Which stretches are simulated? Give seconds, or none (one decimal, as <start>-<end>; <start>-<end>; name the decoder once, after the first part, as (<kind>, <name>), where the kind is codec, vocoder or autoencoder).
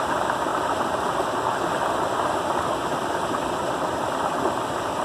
none